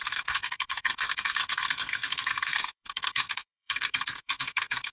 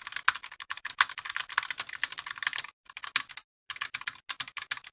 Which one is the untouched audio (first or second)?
second